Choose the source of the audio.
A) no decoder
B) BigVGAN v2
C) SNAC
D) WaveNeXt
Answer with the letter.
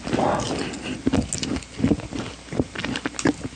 A